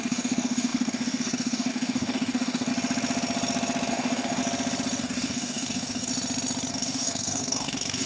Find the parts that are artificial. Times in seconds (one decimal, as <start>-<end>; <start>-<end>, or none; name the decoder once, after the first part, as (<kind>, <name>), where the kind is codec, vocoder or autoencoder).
0.0-2.7 (codec, DAC); 3.9-4.4; 5.0-6.1; 6.7-8.1